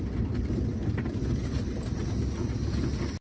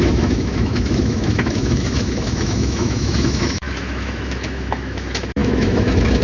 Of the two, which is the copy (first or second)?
second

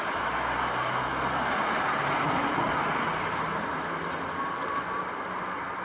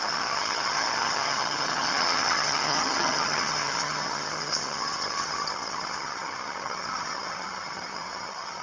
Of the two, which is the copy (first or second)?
second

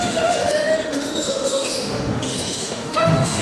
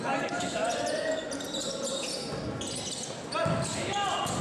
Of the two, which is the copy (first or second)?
first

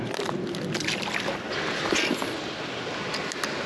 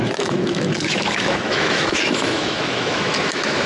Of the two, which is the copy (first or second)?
second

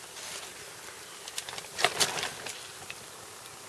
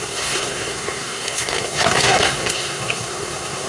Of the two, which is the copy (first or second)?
second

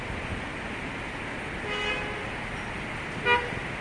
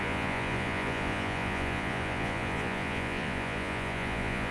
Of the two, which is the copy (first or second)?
second